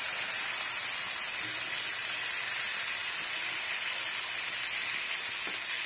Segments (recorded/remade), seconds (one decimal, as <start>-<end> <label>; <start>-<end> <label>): 0.0-5.9 recorded